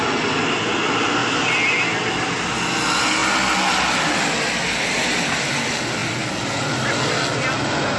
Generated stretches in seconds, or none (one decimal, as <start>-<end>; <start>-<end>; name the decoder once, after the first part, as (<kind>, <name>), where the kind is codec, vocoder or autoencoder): none